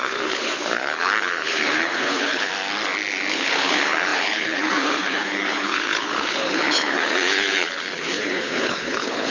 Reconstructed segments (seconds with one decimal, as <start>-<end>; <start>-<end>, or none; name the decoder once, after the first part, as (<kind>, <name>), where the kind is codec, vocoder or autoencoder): 0.0-2.5 (codec, HILCodec); 3.3-9.3